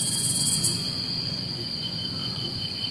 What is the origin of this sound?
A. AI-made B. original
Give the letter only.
A